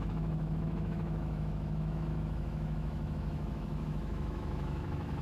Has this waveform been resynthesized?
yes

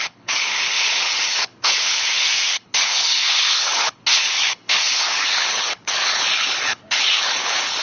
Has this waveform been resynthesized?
yes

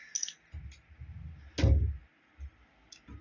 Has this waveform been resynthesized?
no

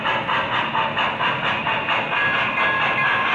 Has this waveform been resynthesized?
no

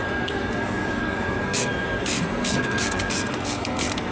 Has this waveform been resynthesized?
yes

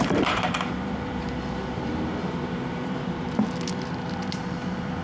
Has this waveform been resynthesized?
yes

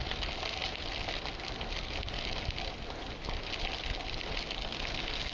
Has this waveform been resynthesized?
no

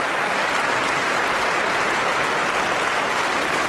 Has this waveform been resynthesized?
no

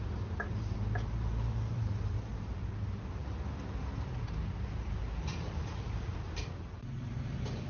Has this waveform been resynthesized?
yes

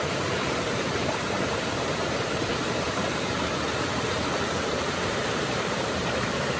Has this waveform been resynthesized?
yes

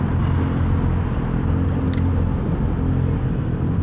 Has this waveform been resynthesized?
no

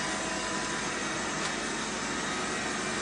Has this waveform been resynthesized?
no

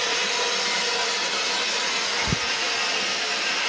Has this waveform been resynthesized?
no